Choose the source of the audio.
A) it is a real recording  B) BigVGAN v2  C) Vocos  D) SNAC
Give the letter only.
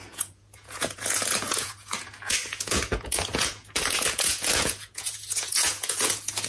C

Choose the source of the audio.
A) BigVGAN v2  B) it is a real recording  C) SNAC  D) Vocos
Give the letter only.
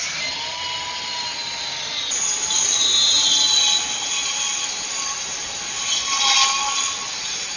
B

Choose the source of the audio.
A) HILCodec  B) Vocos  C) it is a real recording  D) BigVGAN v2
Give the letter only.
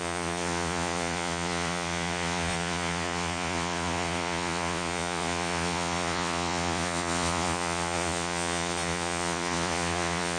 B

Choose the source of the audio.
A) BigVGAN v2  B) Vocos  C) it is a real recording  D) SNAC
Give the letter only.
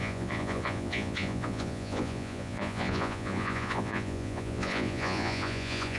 B